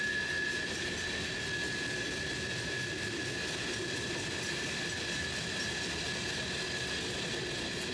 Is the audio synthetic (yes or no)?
no